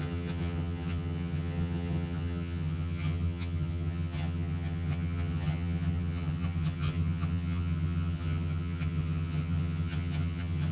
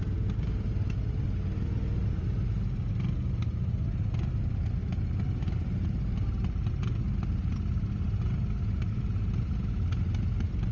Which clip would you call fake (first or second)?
first